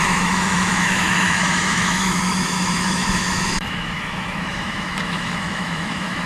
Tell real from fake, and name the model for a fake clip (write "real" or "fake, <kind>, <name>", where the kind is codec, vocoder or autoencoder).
fake, autoencoder, DAC-VAE